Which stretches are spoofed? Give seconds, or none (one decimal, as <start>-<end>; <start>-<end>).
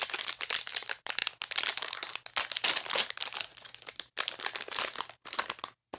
none